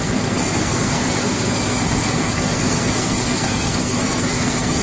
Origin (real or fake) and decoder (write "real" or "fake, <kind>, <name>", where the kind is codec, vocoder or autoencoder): fake, codec, SNAC